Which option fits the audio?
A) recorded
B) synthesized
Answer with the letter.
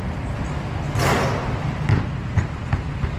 A